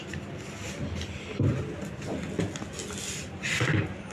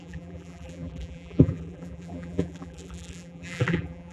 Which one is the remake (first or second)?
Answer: second